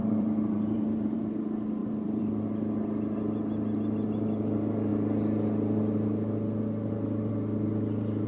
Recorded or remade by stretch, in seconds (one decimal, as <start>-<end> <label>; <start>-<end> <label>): 0.0-1.2 remade; 1.2-1.8 recorded; 1.8-2.3 remade; 2.3-8.3 recorded